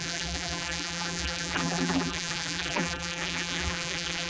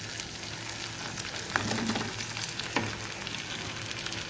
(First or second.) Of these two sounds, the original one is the second